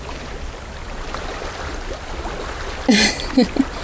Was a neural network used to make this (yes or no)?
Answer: no